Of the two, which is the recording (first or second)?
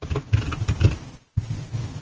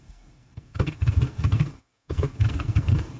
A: first